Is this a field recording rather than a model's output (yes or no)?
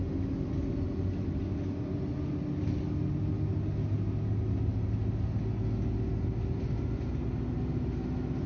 yes